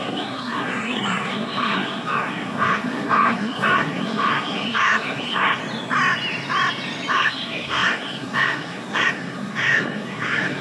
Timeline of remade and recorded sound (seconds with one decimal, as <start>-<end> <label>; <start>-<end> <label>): 0.0-5.6 remade; 5.6-7.1 recorded; 7.1-10.6 remade